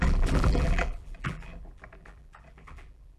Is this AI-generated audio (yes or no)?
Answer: yes